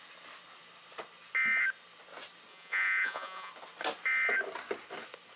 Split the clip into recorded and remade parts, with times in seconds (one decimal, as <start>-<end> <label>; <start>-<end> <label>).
0.0-2.5 recorded; 2.5-3.5 remade; 3.5-5.4 recorded